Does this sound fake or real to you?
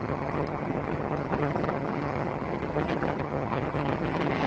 fake